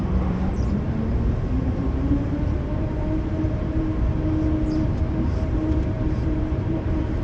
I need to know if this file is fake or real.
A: fake